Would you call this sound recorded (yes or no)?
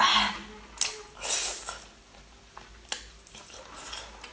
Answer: yes